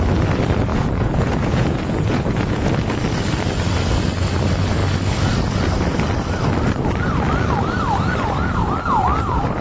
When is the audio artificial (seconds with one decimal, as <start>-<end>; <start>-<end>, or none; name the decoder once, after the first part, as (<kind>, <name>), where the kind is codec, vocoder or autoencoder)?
0.7-2.7 (vocoder, Vocos)